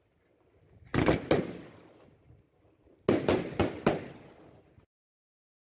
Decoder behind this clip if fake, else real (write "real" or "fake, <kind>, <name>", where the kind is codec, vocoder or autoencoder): real